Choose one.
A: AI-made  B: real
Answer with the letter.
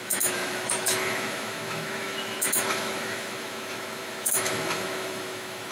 A